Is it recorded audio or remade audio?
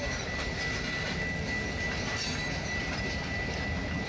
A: recorded